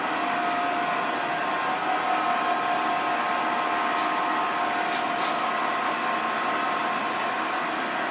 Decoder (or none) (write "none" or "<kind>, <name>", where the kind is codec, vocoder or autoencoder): none